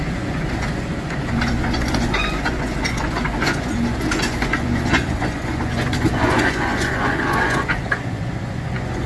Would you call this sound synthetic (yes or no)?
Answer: yes